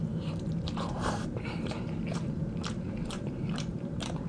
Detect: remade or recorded remade